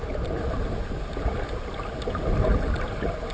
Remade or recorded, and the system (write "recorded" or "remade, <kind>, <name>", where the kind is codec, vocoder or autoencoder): recorded